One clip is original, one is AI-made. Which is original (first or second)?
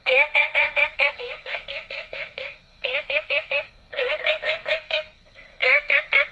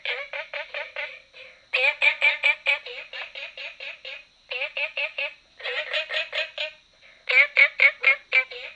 second